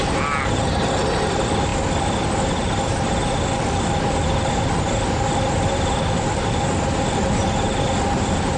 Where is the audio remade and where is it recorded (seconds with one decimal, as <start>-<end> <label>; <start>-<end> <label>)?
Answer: 0.0-8.6 recorded